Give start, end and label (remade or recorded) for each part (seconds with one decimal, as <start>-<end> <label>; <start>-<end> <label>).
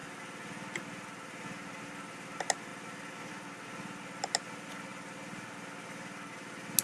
0.0-6.8 recorded